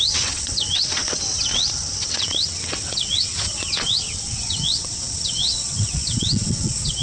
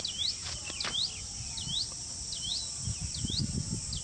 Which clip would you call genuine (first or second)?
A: second